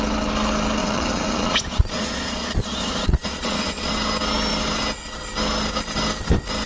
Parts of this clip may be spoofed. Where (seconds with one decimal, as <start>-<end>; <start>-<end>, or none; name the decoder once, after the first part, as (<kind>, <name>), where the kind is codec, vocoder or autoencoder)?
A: 0.8-3.9 (vocoder, Vocos)